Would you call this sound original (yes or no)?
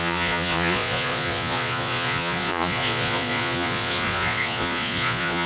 no